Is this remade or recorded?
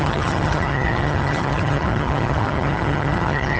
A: remade